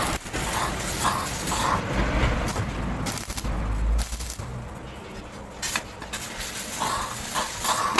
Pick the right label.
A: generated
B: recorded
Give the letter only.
B